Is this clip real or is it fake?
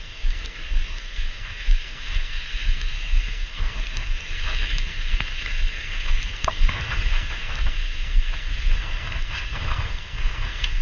fake